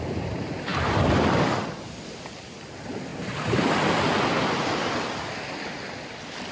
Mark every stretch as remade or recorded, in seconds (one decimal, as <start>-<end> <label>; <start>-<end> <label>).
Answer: 0.0-6.5 recorded